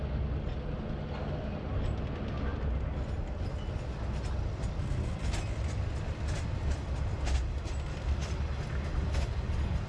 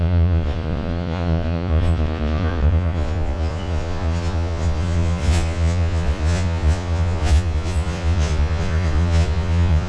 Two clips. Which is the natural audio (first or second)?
first